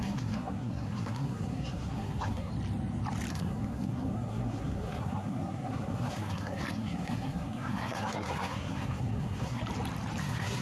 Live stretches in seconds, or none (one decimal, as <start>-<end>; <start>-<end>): 2.5-3.3; 9.6-10.2